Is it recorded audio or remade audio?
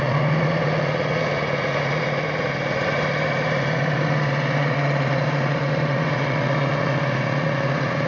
remade